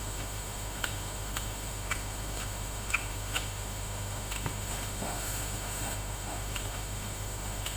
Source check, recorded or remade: remade